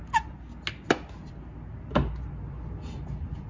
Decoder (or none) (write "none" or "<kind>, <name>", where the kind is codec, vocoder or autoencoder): none